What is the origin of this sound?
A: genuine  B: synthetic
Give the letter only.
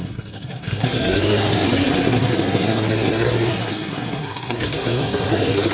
B